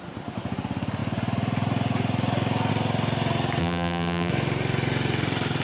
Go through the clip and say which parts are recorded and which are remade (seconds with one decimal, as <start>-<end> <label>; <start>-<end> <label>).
0.0-3.6 recorded; 3.6-4.3 remade; 4.3-5.6 recorded